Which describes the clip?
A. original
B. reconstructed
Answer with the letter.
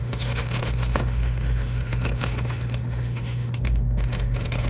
B